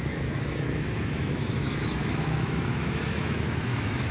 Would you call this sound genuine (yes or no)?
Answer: no